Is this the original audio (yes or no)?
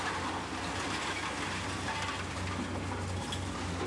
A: yes